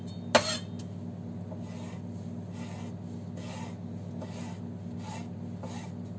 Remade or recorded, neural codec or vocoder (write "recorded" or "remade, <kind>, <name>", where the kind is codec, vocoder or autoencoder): recorded